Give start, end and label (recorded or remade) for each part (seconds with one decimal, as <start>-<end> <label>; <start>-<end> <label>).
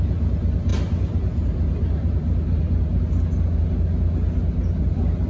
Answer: 0.0-5.3 recorded